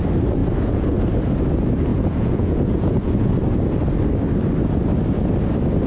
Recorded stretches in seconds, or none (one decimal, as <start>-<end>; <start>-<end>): 0.0-0.4; 1.0-1.9; 3.3-5.9